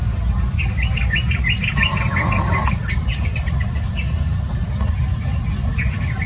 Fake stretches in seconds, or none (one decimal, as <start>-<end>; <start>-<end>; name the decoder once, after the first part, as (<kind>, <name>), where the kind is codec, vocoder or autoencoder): none